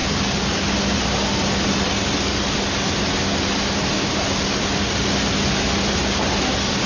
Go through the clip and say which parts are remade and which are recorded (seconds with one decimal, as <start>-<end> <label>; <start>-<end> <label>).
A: 0.0-6.9 recorded